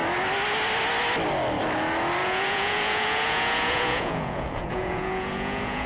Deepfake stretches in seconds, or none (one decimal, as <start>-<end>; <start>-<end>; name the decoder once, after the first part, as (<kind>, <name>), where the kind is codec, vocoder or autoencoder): 2.2-5.9 (vocoder, Vocos)